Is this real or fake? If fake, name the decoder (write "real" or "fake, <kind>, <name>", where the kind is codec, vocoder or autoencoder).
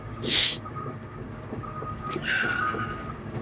fake, codec, DAC